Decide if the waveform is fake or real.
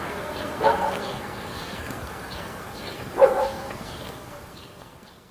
fake